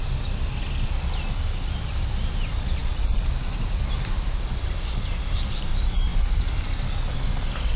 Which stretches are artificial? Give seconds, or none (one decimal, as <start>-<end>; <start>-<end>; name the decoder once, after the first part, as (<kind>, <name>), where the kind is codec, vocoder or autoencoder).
2.8-3.7 (vocoder, BigVGAN v2)